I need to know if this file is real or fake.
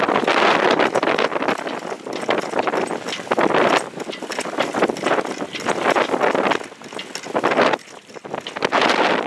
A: real